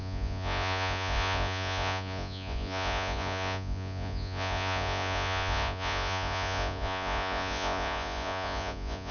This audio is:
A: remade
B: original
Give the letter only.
A